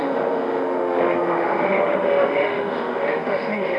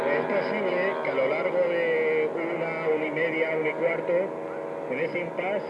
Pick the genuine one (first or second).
second